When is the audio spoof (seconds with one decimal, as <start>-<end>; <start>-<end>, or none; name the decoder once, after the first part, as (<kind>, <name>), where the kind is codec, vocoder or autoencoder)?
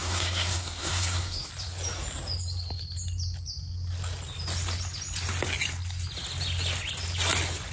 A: 0.0-1.5 (codec, SNAC)